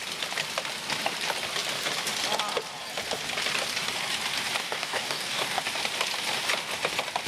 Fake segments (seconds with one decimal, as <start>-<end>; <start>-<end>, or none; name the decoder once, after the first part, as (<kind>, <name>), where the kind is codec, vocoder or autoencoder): 4.6-5.6 (codec, DAC)